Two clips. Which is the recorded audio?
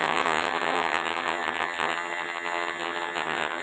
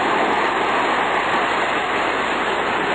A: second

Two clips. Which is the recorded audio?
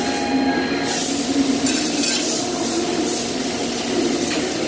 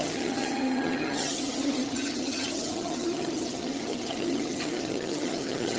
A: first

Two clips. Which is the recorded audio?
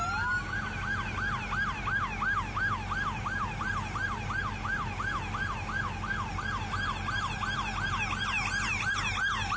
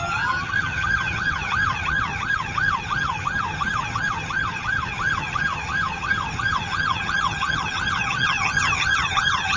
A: first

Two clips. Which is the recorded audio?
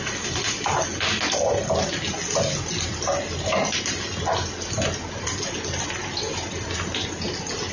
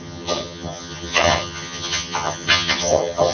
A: first